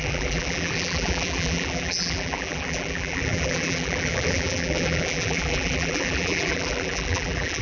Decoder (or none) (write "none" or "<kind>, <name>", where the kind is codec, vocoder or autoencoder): vocoder, BigVGAN v2